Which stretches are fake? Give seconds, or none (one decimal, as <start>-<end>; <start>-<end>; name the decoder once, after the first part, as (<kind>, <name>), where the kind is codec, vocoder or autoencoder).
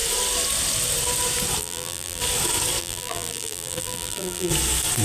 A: 1.6-2.2 (vocoder, BigVGAN v2); 2.8-4.5